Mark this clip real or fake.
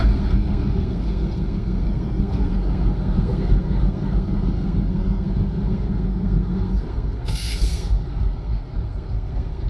fake